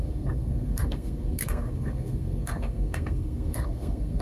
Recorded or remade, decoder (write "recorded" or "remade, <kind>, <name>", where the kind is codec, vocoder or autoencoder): remade, codec, SNAC